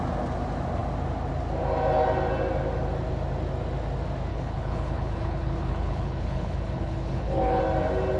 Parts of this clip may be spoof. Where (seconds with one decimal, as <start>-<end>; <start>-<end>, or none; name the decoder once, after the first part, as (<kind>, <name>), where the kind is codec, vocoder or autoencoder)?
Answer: 4.3-7.6 (codec, HILCodec)